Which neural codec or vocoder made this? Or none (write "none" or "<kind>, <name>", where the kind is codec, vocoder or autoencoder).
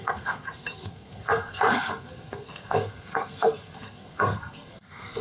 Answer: codec, SNAC